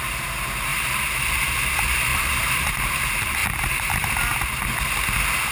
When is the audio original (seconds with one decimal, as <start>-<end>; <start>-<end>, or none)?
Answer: 0.0-2.1; 2.8-3.4; 4.1-5.5